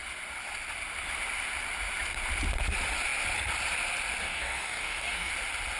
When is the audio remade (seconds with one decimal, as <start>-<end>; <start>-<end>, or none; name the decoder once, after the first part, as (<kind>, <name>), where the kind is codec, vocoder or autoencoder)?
4.2-5.3 (codec, DAC)